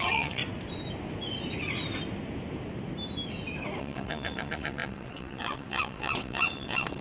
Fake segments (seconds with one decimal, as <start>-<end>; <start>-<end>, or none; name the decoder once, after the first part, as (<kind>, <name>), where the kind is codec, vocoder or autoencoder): 0.0-0.4 (vocoder, WaveNeXt); 3.8-7.0